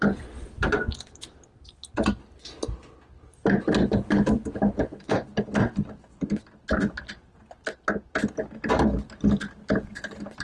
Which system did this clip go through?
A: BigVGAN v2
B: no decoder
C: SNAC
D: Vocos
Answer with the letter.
B